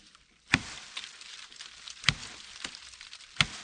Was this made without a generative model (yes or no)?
yes